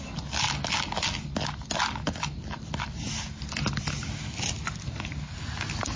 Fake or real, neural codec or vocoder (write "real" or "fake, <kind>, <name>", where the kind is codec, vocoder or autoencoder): real